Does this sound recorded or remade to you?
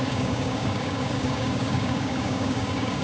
remade